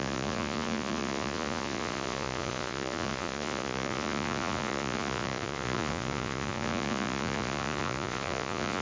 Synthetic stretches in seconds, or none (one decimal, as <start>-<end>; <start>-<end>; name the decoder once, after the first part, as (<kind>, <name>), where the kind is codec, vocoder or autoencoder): 0.0-8.8 (vocoder, Vocos)